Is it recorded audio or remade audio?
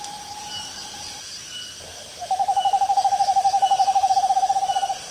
remade